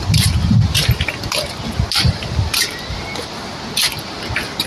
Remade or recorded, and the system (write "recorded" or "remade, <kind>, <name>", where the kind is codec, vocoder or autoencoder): recorded